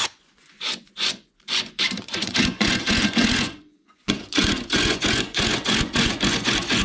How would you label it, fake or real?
fake